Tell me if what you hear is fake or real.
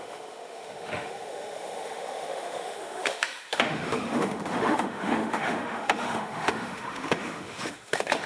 fake